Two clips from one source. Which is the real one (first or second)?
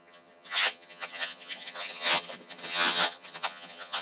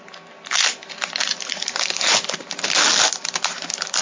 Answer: second